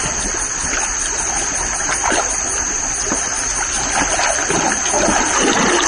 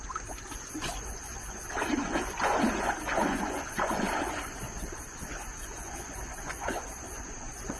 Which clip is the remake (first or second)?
second